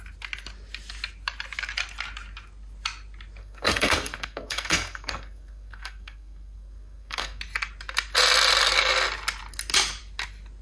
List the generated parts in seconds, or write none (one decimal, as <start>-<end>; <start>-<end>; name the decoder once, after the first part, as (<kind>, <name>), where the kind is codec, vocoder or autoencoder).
3.4-7.4 (codec, SNAC)